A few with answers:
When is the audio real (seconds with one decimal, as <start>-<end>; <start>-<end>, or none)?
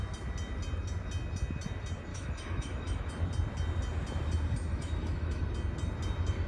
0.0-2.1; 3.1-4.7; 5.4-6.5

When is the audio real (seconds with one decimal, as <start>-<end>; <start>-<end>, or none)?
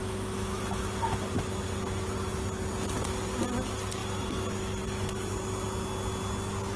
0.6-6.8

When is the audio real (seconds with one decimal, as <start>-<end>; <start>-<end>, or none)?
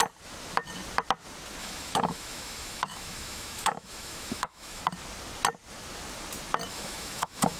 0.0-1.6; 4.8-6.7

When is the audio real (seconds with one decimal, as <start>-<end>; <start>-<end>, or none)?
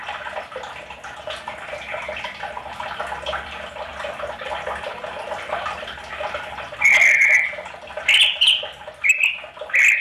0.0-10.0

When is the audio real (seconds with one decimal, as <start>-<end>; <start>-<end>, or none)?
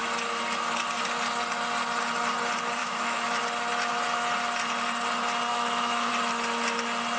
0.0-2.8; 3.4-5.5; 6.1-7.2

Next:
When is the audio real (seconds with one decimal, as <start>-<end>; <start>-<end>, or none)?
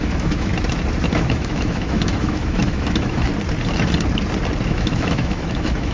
0.5-1.2; 3.3-4.7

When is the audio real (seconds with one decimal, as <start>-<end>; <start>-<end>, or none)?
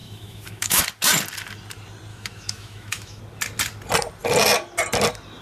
0.8-2.1; 3.2-5.4